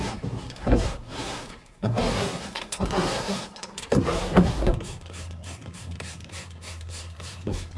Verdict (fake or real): fake